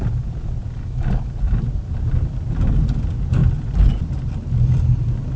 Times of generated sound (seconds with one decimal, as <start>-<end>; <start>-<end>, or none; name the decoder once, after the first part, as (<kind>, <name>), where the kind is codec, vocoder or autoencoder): none